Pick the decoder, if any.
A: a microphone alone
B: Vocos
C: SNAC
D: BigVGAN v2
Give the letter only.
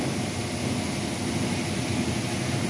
A